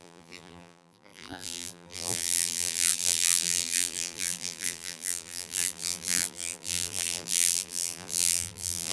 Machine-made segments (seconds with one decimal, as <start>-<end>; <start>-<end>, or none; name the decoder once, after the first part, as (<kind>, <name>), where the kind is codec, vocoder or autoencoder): 0.0-8.9 (vocoder, BigVGAN v2)